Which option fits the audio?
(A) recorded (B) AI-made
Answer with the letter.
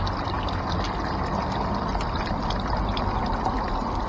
A